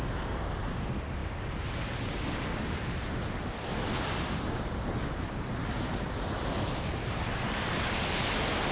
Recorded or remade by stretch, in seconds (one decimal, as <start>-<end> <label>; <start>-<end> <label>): 0.0-8.7 recorded